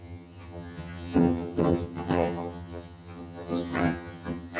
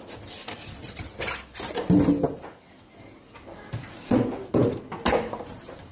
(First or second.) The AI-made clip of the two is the first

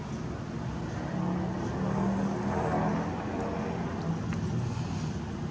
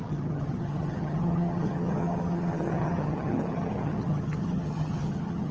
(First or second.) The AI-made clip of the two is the second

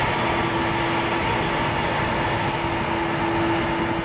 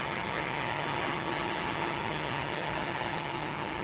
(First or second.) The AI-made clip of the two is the second